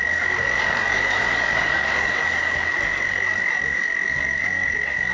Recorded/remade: remade